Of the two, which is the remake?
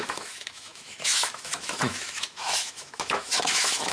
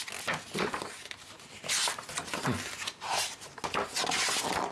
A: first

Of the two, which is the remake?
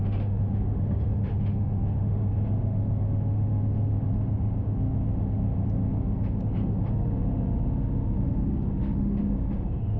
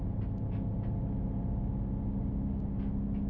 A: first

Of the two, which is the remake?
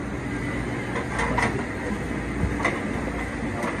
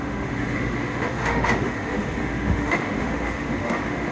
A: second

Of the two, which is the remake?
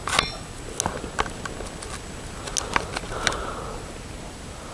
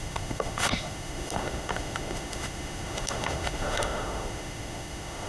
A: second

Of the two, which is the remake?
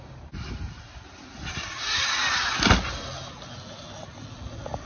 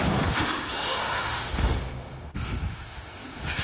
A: second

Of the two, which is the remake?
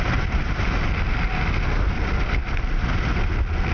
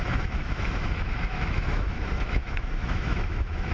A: second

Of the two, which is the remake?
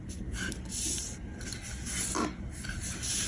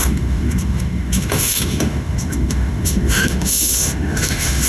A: second